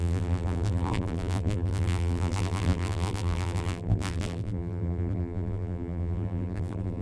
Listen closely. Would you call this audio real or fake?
fake